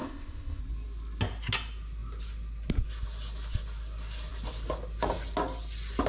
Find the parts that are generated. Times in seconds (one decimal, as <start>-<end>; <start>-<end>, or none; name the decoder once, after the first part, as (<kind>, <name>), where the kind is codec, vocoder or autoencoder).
0.0-0.6 (codec, ZipCodec)